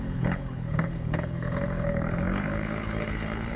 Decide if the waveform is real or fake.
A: fake